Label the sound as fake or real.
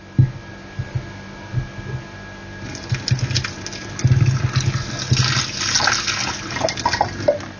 real